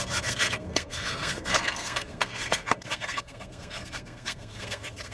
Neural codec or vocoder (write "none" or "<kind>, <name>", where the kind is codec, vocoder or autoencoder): codec, SNAC